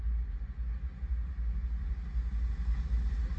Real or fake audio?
real